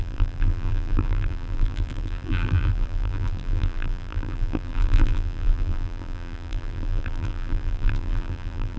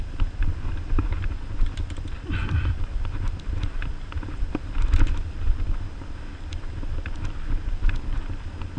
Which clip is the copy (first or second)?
first